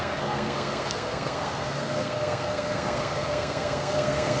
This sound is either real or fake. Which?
fake